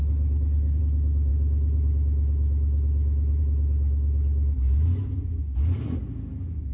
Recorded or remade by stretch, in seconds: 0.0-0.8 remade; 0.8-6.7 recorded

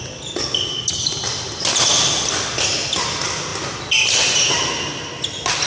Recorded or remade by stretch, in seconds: 0.0-5.7 recorded

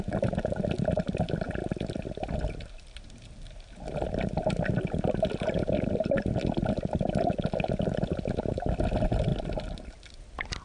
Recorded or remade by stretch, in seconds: 0.0-10.6 recorded

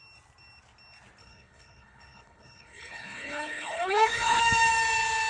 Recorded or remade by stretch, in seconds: 0.0-1.2 recorded; 1.2-4.4 remade; 4.4-5.3 recorded

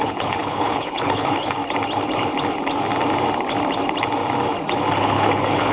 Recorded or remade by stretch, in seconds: 0.0-1.6 remade; 1.6-5.0 recorded; 5.0-5.7 remade

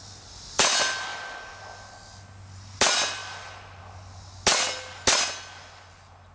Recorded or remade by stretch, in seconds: 0.0-6.3 recorded

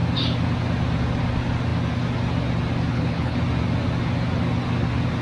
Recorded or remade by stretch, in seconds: 0.0-2.9 recorded; 2.9-3.4 remade; 3.4-5.2 recorded